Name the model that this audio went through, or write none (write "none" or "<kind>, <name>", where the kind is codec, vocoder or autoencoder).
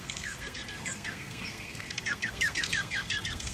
codec, SNAC